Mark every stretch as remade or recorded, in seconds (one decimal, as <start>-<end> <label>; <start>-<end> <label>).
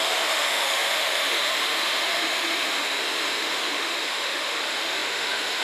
0.0-5.6 remade